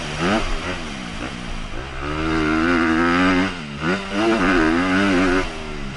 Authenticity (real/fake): real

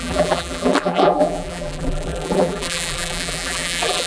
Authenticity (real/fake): fake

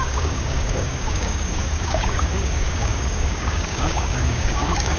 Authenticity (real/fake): fake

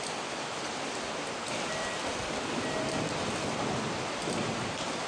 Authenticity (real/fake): real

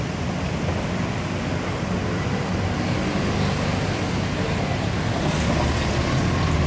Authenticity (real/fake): real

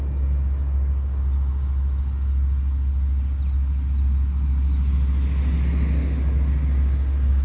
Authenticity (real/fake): real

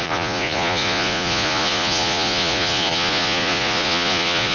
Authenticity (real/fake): fake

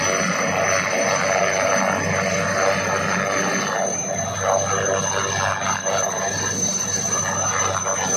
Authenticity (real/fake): real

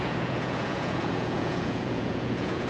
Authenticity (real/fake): fake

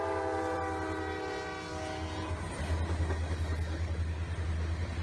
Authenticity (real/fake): real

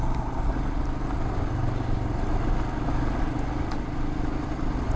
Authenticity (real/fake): real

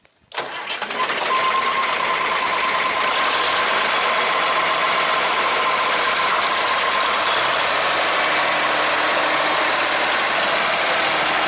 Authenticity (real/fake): real